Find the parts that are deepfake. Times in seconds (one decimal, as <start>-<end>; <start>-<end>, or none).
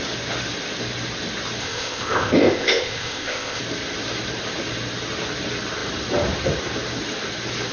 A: 1.6-3.6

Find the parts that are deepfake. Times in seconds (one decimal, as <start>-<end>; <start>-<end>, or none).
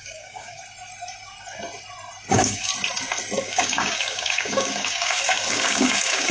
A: 0.0-0.6; 2.3-2.7; 3.4-6.3